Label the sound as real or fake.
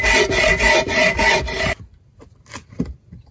real